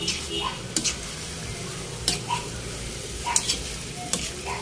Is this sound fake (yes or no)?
no